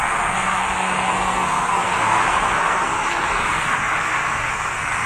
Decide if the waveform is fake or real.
fake